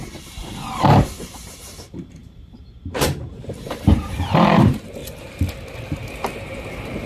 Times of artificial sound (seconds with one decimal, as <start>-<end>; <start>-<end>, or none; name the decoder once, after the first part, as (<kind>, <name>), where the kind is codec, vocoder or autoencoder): 0.0-5.0 (vocoder, BigVGAN v2); 6.4-7.1